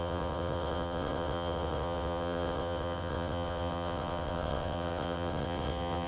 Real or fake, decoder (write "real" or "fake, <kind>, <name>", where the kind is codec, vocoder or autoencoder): fake, vocoder, WaveNeXt